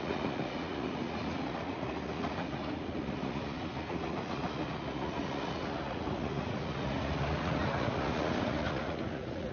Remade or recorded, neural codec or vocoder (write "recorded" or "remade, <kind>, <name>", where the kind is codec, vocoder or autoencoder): remade, vocoder, Vocos